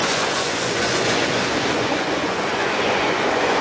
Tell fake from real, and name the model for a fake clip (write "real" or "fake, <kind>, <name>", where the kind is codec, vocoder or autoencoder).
fake, vocoder, Vocos